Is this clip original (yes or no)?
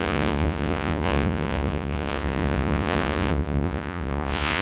no